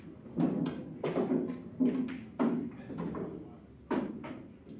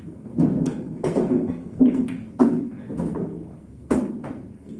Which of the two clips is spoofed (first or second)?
second